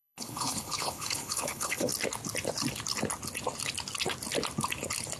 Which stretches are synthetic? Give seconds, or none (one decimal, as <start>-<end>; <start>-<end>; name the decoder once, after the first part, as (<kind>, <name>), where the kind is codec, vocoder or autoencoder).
0.0-1.9 (codec, HILCodec)